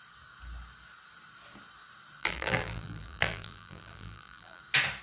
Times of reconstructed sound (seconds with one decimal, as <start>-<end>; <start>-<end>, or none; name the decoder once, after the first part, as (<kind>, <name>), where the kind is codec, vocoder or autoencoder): 2.2-4.6 (vocoder, BigVGAN v2)